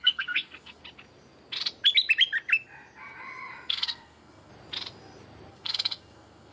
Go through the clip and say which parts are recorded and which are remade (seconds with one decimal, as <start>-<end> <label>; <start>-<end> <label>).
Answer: 0.0-0.8 remade; 0.8-3.7 recorded; 3.7-4.5 remade; 4.5-5.5 recorded; 5.5-6.5 remade